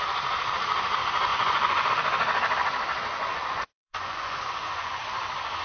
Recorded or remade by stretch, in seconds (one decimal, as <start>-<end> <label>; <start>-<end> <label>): 0.0-1.3 recorded; 1.3-1.9 remade; 1.9-3.1 recorded; 3.1-5.0 remade; 5.0-5.6 recorded